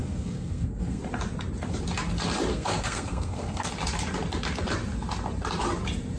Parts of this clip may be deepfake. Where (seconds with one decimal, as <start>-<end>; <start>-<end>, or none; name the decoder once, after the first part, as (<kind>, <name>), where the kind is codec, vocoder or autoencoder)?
0.0-1.0 (codec, SNAC); 2.5-3.7